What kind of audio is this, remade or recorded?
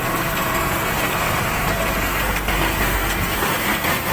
remade